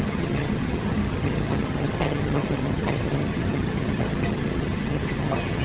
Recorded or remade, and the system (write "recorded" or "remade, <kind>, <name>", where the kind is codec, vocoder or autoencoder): remade, vocoder, HiFi-GAN